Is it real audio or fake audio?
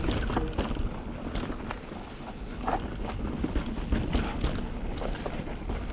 real